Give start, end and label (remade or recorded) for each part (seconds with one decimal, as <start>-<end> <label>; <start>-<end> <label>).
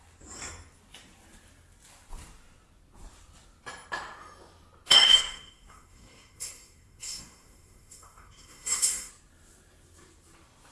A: 0.0-4.9 recorded; 4.9-9.1 remade; 9.1-10.7 recorded